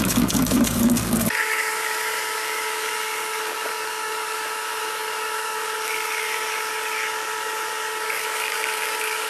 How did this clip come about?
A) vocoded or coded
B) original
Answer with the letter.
A